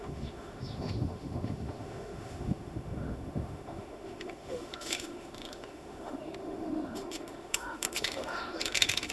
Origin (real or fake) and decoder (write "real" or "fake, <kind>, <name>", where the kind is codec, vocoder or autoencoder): fake, autoencoder, DAC-VAE